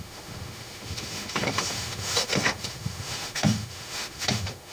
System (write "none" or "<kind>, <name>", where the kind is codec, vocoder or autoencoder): autoencoder, DAC-VAE